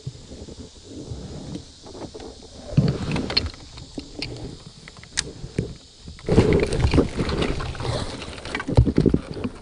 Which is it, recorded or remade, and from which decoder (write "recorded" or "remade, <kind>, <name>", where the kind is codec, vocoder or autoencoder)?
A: recorded